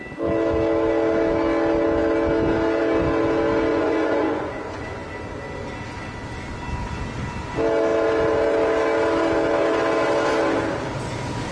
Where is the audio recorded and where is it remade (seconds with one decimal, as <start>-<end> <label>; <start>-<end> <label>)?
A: 0.0-3.7 recorded; 3.7-5.1 remade; 5.1-11.5 recorded